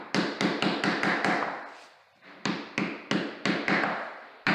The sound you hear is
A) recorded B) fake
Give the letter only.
A